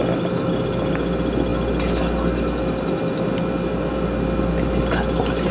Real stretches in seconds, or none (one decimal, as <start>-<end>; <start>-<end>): 0.0-5.5